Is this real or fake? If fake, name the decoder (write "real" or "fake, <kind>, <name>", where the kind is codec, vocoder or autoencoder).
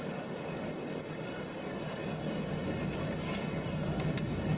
real